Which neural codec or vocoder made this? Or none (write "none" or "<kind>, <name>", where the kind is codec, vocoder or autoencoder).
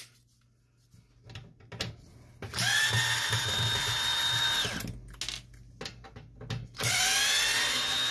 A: none